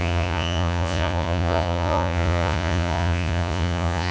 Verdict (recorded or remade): remade